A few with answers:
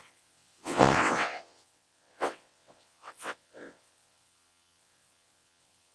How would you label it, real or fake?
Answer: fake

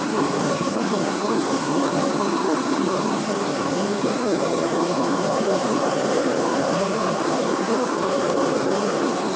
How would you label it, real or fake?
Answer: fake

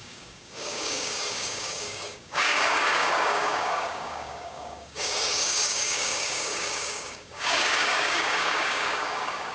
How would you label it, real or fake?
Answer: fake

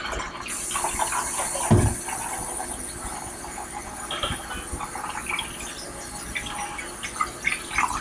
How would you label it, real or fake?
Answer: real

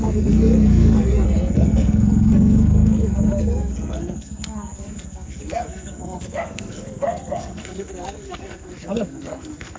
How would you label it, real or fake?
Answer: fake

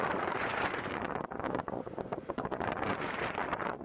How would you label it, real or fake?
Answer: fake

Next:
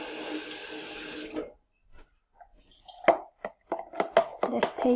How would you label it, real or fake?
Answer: real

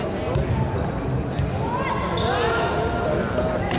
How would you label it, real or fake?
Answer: real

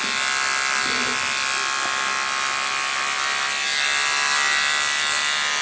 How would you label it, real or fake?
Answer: real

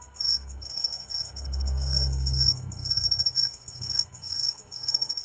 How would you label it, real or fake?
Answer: fake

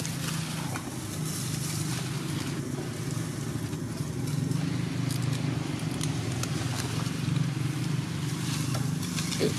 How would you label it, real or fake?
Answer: real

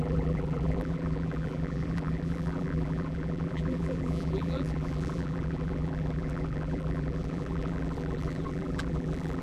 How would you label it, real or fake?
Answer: fake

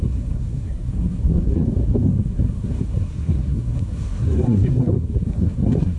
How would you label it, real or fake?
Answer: fake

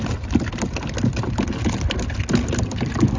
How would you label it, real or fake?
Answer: real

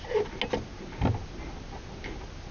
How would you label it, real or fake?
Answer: real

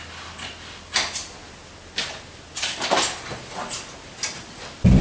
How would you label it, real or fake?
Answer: real